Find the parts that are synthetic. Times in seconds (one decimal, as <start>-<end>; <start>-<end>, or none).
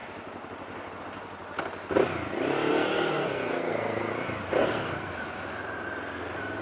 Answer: 2.7-4.1; 4.6-5.1